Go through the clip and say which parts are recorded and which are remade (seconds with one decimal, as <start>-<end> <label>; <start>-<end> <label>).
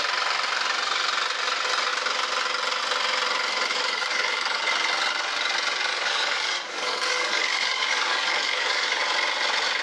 0.0-3.7 recorded; 3.7-4.6 remade; 4.6-5.9 recorded; 5.9-9.0 remade; 9.0-9.8 recorded